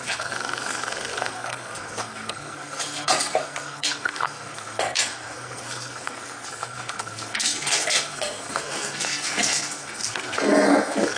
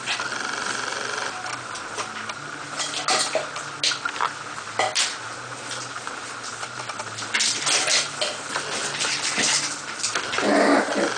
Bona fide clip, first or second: second